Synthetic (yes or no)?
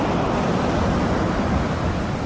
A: no